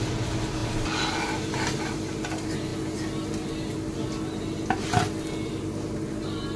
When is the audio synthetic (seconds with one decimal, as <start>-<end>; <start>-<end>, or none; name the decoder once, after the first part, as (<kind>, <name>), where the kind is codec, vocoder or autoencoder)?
none